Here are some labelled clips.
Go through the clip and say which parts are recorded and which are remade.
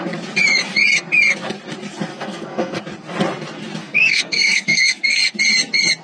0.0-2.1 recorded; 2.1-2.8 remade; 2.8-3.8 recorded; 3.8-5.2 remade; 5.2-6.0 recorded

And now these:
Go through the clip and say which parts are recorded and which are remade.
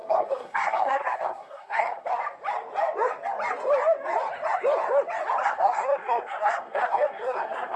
0.0-2.2 remade; 2.2-5.4 recorded; 5.4-7.8 remade